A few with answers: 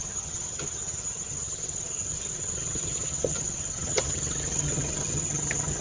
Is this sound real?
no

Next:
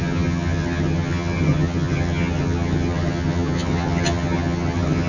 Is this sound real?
no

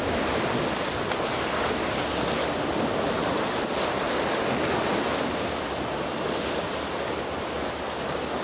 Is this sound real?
yes